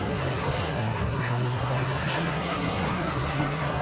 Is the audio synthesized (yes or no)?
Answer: yes